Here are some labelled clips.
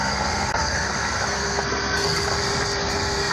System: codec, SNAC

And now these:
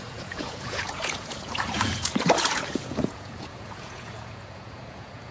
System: vocoder, Vocos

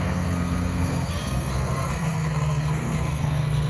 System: codec, SNAC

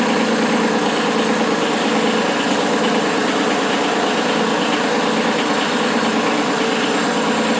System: none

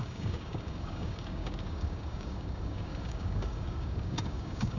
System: codec, DAC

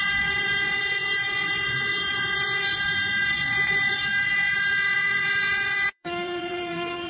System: vocoder, Vocos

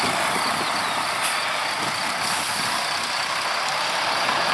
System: none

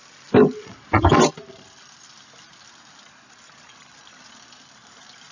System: none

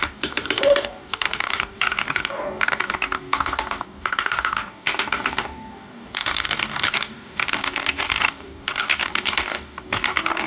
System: codec, DAC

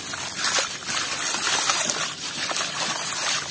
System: none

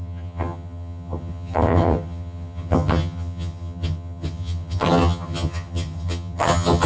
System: vocoder, HiFi-GAN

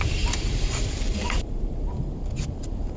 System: vocoder, BigVGAN v2